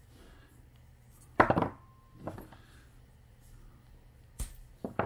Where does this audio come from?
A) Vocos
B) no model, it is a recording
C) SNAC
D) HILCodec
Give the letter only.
B